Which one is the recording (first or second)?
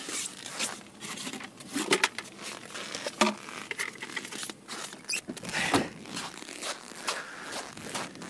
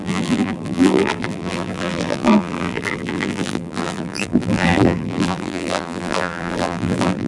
first